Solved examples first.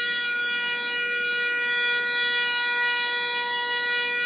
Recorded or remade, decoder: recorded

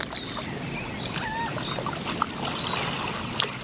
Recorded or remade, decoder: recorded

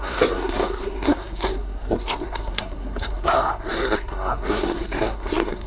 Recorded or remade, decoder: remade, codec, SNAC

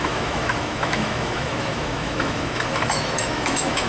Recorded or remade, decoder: remade, autoencoder, DAC-VAE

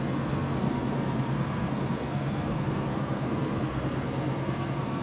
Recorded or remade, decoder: remade, codec, SNAC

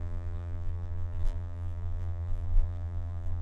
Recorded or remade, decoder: remade, vocoder, BigVGAN v2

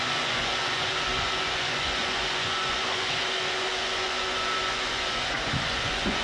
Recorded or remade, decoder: remade, vocoder, Vocos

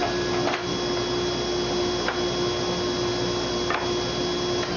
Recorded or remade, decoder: recorded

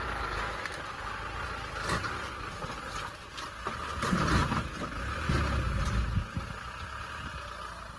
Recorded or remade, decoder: recorded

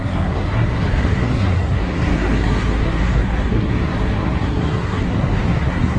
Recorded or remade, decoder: remade, codec, SNAC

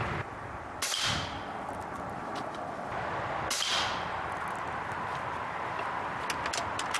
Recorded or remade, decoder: recorded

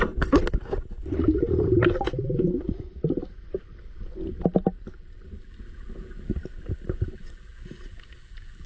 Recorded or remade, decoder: recorded